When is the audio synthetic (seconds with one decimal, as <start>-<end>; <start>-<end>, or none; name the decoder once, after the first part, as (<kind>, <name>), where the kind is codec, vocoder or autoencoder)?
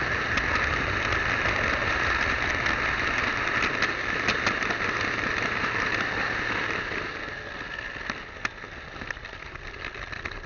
1.8-2.5 (vocoder, BigVGAN v2)